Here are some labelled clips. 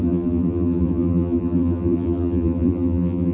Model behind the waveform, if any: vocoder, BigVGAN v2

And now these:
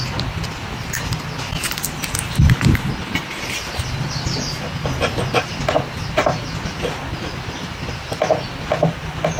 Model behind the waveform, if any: none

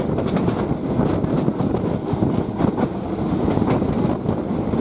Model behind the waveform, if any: none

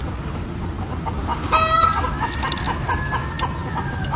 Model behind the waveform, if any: none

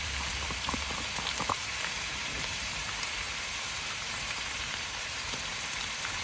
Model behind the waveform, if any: vocoder, BigVGAN v2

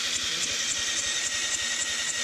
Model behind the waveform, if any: vocoder, BigVGAN v2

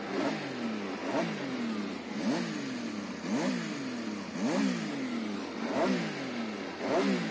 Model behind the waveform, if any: none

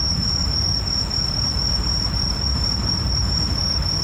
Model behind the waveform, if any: vocoder, BigVGAN v2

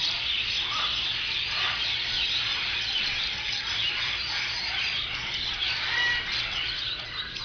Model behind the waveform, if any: vocoder, BigVGAN v2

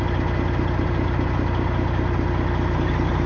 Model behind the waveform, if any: none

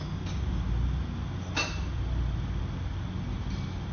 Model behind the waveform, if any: none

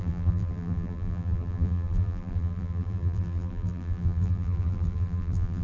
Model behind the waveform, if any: vocoder, BigVGAN v2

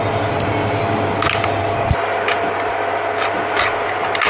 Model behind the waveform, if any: none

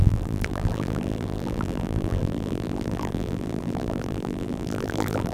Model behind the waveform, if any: vocoder, BigVGAN v2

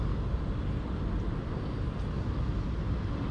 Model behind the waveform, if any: none